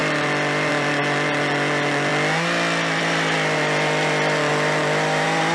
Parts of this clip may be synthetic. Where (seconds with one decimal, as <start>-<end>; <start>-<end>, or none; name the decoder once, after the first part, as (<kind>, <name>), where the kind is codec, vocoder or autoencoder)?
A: 0.0-2.1 (vocoder, BigVGAN v2); 3.0-5.5